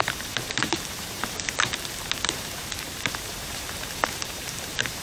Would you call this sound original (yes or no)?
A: no